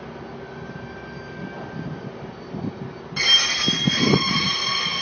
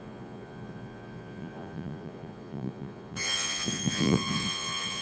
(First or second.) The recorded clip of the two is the first